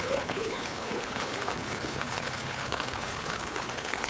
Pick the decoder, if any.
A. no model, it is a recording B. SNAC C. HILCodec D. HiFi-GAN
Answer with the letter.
C